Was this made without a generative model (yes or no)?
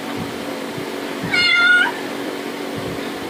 no